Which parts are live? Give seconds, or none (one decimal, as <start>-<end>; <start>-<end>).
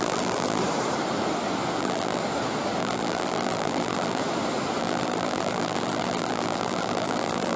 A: 0.6-1.8; 2.2-2.8; 4.2-4.8